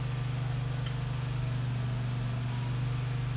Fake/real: real